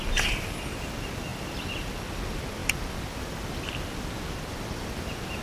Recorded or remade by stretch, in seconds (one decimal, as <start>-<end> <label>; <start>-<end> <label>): 0.0-5.4 recorded